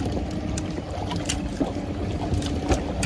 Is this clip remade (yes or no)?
no